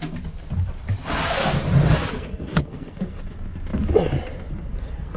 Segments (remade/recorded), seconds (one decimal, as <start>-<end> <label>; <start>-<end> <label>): 0.0-2.1 recorded; 2.1-3.2 remade; 3.2-4.7 recorded; 4.7-5.2 remade